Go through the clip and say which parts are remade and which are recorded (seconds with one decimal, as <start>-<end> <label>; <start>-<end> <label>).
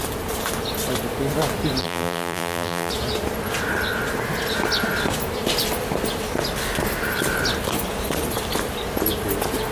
0.0-1.8 recorded; 1.8-2.9 remade; 2.9-9.7 recorded